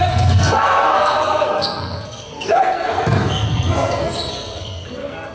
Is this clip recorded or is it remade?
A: remade